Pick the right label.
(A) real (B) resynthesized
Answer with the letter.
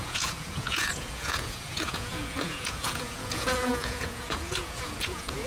B